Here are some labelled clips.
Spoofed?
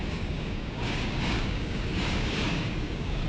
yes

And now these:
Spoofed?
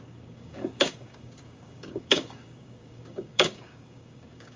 yes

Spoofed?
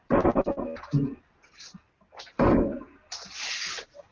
no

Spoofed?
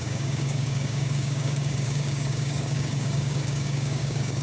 yes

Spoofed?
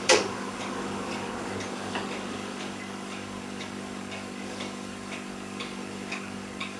yes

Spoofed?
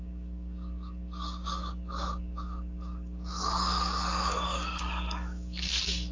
yes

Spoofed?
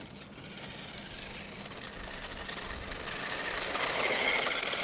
no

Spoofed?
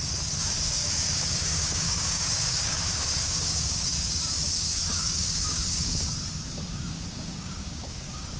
yes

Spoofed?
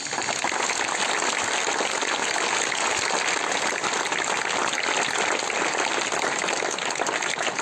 no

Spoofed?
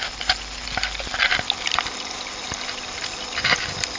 no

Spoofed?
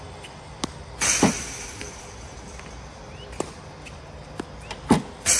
no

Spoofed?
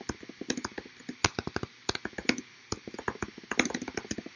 no